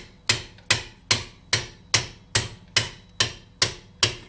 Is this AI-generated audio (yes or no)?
no